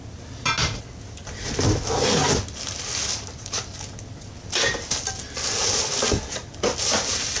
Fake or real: real